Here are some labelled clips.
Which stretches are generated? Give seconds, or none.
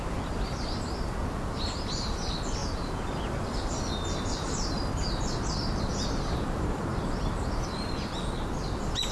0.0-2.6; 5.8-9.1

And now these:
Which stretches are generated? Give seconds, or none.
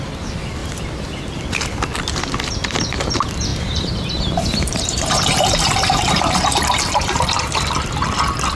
0.6-1.4; 3.5-7.7